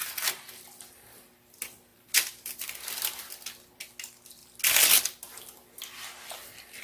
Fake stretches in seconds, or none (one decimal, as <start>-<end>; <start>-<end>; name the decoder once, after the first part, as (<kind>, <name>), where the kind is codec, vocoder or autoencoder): 1.9-3.2 (vocoder, BigVGAN v2)